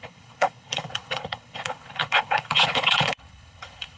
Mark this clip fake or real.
fake